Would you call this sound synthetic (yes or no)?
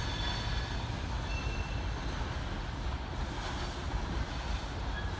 no